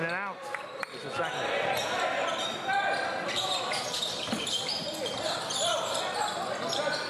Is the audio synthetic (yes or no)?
no